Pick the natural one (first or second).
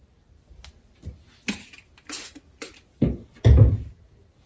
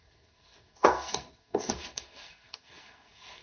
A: first